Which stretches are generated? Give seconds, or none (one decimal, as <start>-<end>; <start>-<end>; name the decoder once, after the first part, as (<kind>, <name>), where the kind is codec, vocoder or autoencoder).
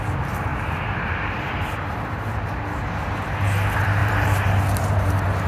0.5-2.6 (vocoder, BigVGAN v2); 4.0-4.6